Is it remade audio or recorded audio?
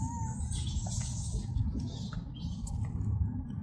recorded